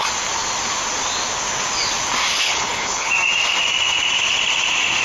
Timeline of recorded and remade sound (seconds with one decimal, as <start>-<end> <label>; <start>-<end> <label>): 0.0-2.3 recorded; 2.3-3.1 remade; 3.1-5.0 recorded